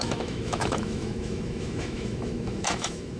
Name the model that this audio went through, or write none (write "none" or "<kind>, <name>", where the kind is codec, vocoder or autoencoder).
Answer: autoencoder, DAC-VAE